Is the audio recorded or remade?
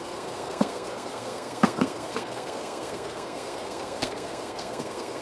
remade